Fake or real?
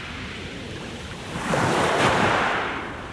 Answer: fake